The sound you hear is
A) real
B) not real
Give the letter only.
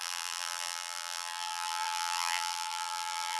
B